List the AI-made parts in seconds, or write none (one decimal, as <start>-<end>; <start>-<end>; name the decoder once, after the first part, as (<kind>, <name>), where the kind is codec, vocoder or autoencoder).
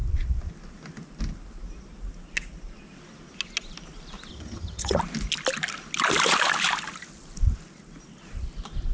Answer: 4.3-5.0 (vocoder, HiFi-GAN)